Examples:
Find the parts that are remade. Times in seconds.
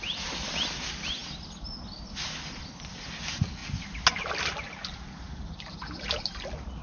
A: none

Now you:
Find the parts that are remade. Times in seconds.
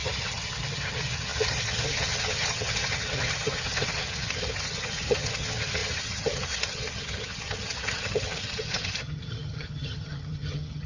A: 0.0-10.9 (vocoder, HiFi-GAN)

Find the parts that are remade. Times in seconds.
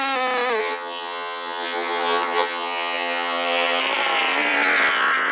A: 0.6-3.8 (vocoder, HiFi-GAN)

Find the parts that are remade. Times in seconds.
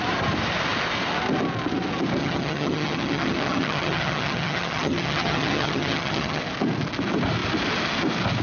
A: 2.2-6.4 (vocoder, HiFi-GAN)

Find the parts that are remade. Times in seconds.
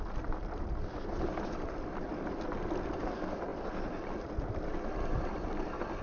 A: none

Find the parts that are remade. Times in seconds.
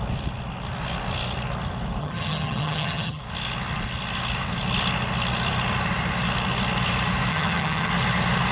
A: 2.0-3.2 (vocoder, HiFi-GAN); 7.3-7.9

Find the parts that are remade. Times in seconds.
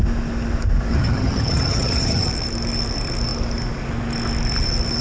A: 0.9-2.3 (vocoder, HiFi-GAN)